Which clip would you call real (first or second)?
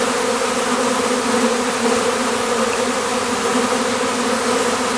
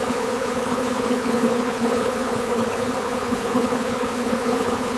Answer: first